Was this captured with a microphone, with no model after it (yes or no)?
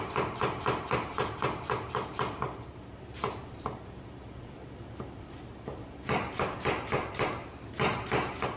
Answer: yes